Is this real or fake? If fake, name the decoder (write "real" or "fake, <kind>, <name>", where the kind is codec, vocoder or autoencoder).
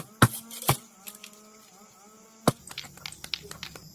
real